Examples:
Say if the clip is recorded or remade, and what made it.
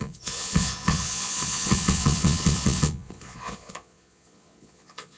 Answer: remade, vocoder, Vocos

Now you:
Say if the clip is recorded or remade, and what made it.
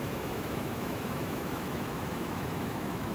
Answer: remade, autoencoder, DAC-VAE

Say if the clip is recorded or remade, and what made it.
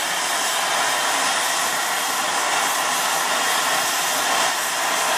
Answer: recorded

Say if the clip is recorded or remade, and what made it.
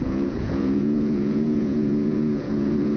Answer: remade, vocoder, Vocos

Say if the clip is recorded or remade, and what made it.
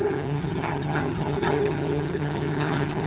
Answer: remade, vocoder, HiFi-GAN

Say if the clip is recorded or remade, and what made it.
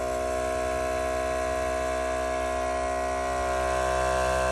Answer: recorded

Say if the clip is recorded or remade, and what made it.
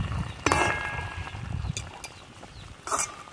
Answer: recorded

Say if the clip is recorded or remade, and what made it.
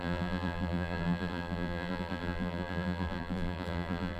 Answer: remade, vocoder, BigVGAN v2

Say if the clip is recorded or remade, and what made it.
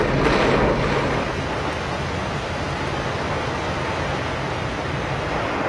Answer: recorded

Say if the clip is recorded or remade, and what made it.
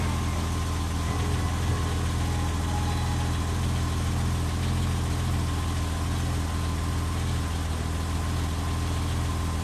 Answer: recorded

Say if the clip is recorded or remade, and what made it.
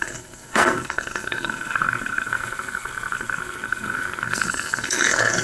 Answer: remade, codec, SNAC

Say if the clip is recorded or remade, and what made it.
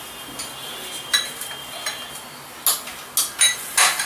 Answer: recorded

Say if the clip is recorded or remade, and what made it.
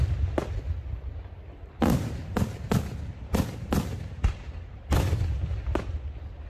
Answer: recorded